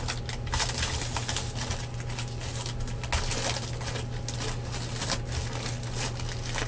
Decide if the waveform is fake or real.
real